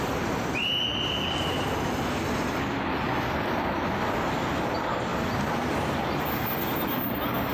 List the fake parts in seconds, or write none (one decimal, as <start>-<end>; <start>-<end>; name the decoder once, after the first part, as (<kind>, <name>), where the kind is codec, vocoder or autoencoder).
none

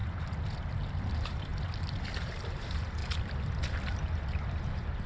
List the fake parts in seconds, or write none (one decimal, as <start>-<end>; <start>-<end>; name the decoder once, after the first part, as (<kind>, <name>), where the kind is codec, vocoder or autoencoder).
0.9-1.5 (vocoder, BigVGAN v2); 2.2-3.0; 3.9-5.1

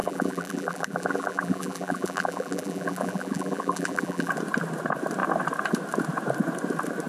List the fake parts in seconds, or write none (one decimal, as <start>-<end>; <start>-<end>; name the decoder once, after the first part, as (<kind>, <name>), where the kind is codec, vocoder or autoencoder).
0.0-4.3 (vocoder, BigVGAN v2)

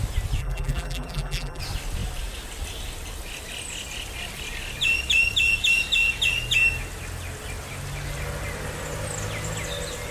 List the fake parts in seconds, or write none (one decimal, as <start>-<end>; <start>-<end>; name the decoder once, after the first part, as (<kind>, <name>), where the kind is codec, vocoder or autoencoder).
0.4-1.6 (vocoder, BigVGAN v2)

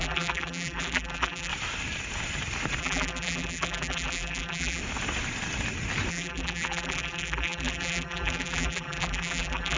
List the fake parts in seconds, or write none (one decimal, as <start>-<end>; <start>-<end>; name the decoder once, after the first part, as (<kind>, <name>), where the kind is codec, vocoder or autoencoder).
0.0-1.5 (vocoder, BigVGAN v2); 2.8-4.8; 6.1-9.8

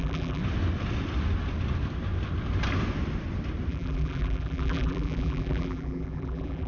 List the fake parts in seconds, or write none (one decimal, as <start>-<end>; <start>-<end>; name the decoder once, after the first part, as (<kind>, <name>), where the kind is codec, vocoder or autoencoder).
0.0-0.4 (vocoder, BigVGAN v2); 3.7-6.7